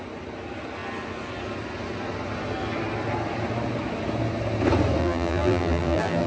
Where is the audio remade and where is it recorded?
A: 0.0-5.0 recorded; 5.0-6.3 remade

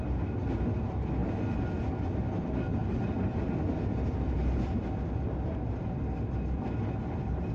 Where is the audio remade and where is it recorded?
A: 0.0-7.5 recorded